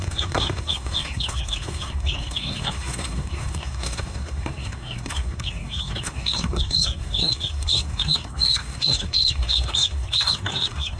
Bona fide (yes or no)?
no